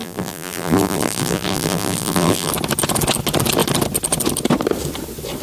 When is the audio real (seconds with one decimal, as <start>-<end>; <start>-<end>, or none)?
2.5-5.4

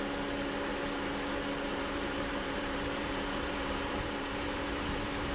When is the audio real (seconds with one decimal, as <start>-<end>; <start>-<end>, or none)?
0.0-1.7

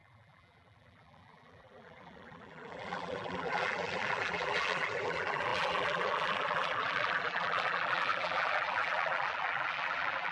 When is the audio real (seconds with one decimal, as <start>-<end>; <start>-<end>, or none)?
none

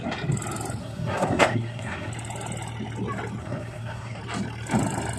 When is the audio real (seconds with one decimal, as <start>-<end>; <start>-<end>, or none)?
0.0-0.8; 2.1-3.4; 4.2-5.2

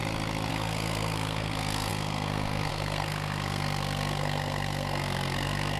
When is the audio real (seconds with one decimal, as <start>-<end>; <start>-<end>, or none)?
0.0-0.5